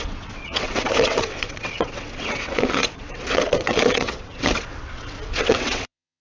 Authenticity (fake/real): fake